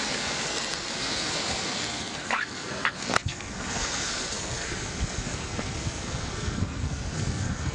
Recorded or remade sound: remade